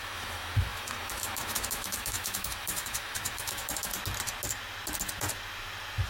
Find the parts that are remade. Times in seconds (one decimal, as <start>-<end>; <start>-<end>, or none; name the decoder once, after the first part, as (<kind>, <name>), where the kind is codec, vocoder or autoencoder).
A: 0.0-3.9 (autoencoder, DAC-VAE)